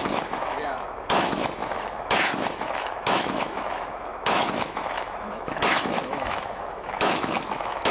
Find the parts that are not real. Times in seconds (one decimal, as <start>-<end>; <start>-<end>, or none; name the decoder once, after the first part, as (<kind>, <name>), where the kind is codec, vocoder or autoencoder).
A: 0.0-7.9 (autoencoder, DAC-VAE)